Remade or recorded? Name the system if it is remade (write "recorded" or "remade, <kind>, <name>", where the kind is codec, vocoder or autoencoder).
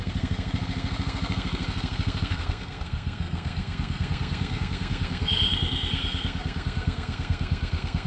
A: remade, codec, SNAC